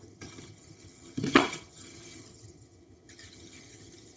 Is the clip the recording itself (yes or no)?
no